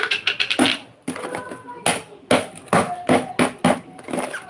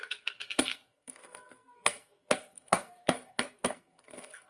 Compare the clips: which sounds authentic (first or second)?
first